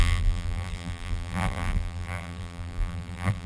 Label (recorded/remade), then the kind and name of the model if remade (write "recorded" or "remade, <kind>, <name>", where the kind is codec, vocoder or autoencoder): remade, vocoder, BigVGAN v2